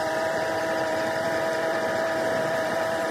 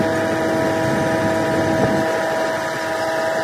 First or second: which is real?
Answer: second